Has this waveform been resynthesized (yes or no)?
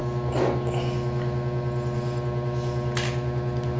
no